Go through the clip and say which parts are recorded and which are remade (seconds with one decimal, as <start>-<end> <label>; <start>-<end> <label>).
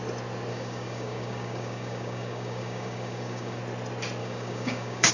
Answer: 0.0-0.5 recorded; 0.5-3.6 remade; 3.6-4.2 recorded; 4.2-5.1 remade